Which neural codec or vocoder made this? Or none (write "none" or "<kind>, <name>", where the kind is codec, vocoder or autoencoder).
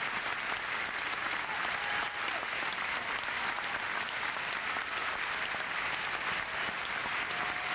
none